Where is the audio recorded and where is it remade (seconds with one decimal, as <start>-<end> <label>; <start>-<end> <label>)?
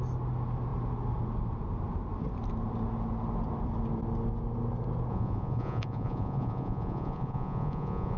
0.0-5.1 recorded; 5.1-8.2 remade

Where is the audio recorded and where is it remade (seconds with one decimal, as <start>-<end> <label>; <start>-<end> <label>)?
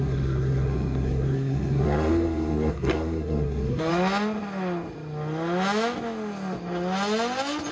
0.0-3.9 remade; 3.9-7.7 recorded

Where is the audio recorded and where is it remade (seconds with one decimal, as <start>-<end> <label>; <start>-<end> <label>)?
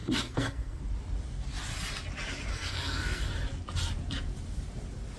0.0-0.8 remade; 0.8-2.5 recorded; 2.5-3.3 remade; 3.3-5.2 recorded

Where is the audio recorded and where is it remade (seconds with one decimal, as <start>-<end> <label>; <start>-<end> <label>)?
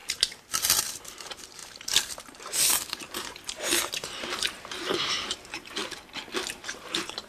0.0-5.8 remade; 5.8-6.7 recorded; 6.7-7.3 remade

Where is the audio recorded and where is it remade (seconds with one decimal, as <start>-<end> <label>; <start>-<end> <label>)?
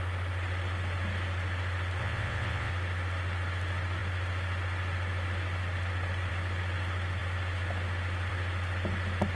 0.0-2.0 recorded; 2.0-2.7 remade; 2.7-9.4 recorded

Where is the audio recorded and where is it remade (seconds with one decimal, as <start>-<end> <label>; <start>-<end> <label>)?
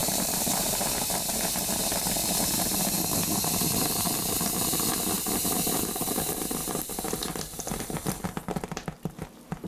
0.0-1.7 remade; 1.7-2.2 recorded; 2.2-5.0 remade; 5.0-9.7 recorded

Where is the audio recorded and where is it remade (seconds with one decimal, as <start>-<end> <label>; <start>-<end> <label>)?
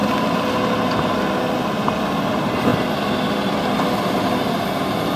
0.0-5.2 recorded